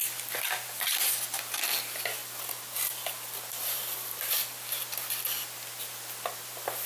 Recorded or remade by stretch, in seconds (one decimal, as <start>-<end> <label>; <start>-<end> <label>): 0.0-1.0 remade; 1.0-2.2 recorded; 2.2-4.7 remade; 4.7-6.9 recorded